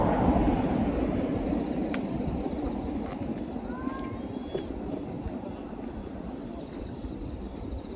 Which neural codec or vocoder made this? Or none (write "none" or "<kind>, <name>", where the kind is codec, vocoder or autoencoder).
none